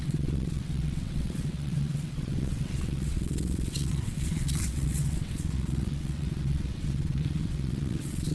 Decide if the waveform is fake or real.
fake